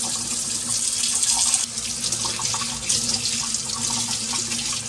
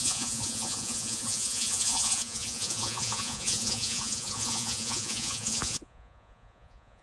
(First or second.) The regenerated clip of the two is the second